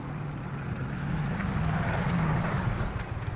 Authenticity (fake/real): real